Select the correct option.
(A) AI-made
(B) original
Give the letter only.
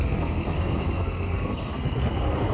A